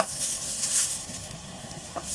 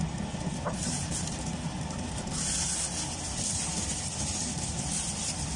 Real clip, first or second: second